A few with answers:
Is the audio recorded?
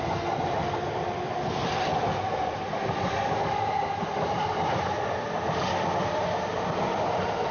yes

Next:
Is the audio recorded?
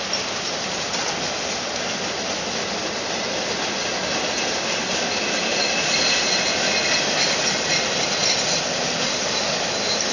yes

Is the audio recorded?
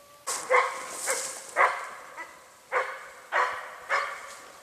yes